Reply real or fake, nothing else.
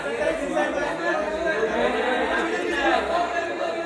real